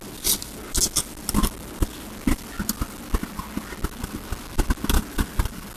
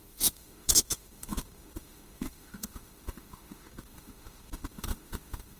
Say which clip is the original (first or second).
first